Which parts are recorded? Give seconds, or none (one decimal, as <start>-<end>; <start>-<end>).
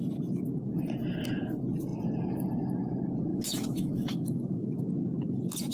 0.0-3.3; 4.8-5.7